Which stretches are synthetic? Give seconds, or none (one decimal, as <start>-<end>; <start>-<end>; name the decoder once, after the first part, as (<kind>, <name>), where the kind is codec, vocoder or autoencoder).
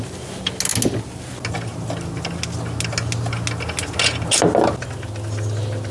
none